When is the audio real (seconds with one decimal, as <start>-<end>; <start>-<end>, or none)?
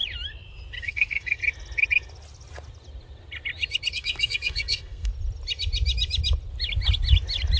0.0-0.8; 1.4-3.9; 5.1-7.6